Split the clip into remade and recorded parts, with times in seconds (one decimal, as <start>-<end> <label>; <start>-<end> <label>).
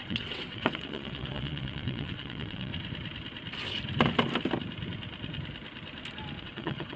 0.0-2.7 remade; 2.7-6.4 recorded; 6.4-7.0 remade